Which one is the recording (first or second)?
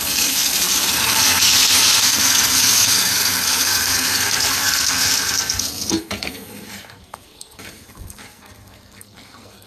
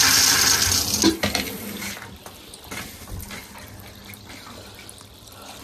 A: second